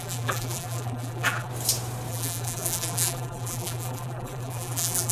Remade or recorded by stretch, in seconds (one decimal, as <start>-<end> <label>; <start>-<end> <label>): 0.0-1.5 remade; 1.5-2.1 recorded; 2.1-5.1 remade